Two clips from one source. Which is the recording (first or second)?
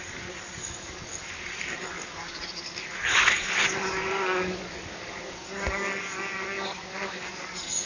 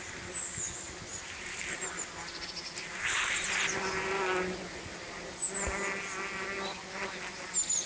second